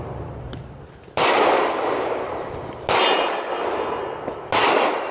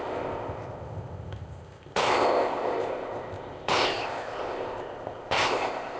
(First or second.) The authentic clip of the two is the first